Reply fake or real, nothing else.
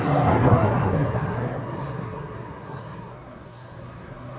fake